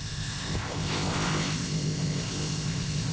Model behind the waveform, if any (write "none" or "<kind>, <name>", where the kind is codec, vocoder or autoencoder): codec, ZipCodec